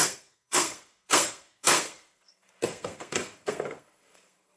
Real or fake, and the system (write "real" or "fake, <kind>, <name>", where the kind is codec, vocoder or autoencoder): fake, codec, SNAC